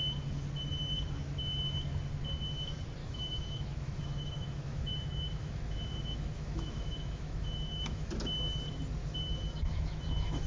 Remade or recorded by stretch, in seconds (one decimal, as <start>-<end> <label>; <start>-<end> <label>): 0.0-3.0 recorded; 3.0-8.1 remade; 8.1-9.0 recorded; 9.0-10.5 remade